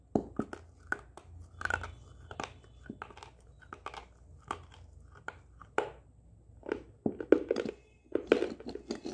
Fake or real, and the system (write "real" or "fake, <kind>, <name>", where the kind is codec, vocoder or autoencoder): real